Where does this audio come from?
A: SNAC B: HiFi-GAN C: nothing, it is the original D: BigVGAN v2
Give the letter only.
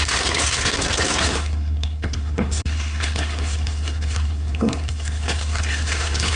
A